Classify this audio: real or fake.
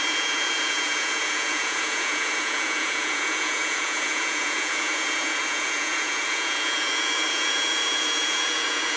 fake